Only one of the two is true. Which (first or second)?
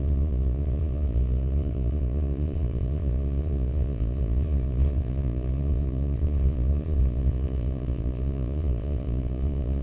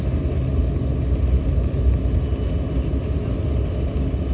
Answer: second